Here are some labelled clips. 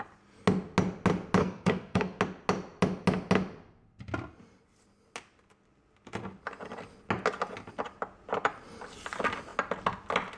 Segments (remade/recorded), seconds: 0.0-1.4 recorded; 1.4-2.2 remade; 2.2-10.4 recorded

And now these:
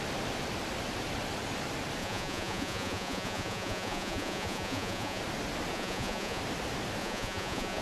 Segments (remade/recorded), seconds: 0.0-2.0 recorded; 2.0-5.2 remade; 5.2-5.7 recorded; 5.7-6.4 remade; 6.4-7.0 recorded; 7.0-7.8 remade

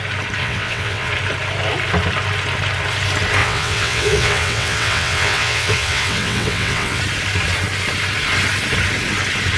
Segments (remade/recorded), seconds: 0.0-0.4 recorded; 0.4-1.1 remade; 1.1-3.4 recorded; 3.4-7.0 remade; 7.0-9.6 recorded

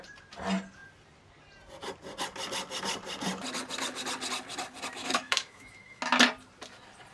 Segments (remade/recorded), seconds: 0.0-5.0 recorded; 5.0-6.0 remade; 6.0-7.1 recorded

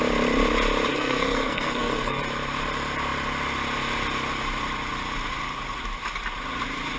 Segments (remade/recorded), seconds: 0.0-0.9 recorded; 0.9-2.2 remade; 2.2-7.0 recorded

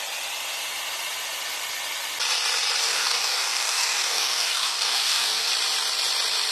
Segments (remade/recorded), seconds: 0.0-2.8 recorded; 2.8-5.5 remade; 5.5-6.5 recorded

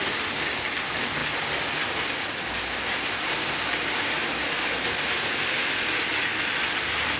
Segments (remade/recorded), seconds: 0.0-7.2 recorded

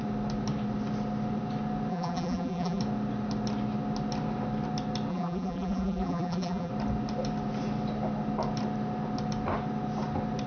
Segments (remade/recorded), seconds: 0.0-1.9 recorded; 1.9-2.8 remade; 2.8-5.1 recorded; 5.1-6.7 remade; 6.7-10.5 recorded